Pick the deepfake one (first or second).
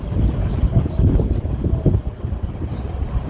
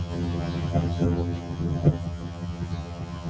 second